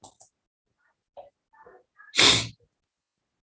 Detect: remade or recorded recorded